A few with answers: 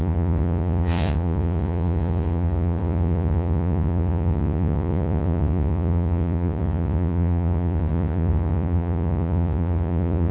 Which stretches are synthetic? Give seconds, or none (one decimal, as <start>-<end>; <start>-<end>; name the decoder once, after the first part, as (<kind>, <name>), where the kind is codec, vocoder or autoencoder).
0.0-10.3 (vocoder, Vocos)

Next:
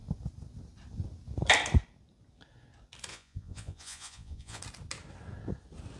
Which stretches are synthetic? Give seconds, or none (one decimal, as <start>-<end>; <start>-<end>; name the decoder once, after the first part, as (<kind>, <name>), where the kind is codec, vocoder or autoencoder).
3.1-4.6 (vocoder, Vocos)

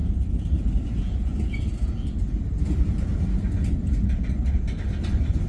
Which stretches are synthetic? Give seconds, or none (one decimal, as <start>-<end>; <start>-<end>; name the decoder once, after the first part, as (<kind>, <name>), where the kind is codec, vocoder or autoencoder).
0.0-0.7 (vocoder, BigVGAN v2)